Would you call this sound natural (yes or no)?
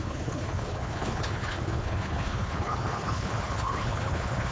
no